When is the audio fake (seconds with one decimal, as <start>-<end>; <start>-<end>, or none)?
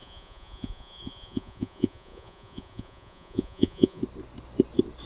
0.0-4.0